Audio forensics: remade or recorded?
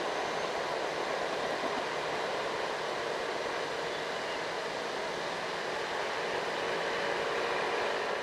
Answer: recorded